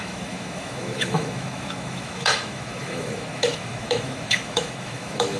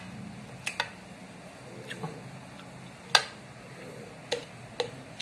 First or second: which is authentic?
second